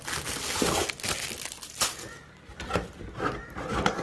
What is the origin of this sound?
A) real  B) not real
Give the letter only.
A